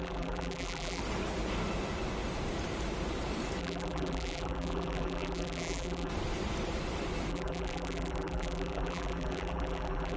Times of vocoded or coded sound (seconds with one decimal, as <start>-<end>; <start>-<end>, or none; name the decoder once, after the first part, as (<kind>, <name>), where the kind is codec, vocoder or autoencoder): 0.0-1.0 (vocoder, BigVGAN v2); 3.6-6.1; 7.3-10.2